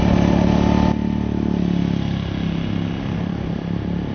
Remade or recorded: recorded